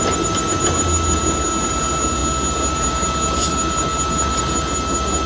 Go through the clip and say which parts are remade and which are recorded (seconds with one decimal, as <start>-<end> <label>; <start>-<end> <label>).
0.0-5.3 recorded